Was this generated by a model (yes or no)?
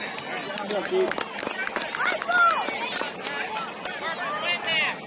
no